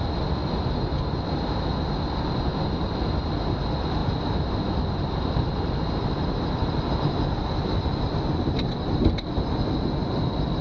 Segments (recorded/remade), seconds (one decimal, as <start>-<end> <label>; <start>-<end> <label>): 0.0-10.6 recorded